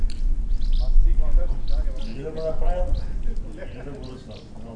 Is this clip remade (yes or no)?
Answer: no